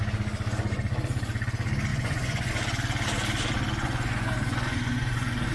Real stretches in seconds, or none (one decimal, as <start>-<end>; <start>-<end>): 0.0-1.9; 2.5-3.8